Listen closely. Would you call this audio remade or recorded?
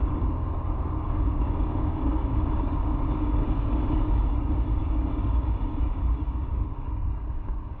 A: remade